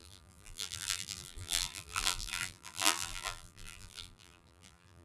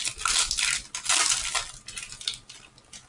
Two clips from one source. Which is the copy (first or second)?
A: first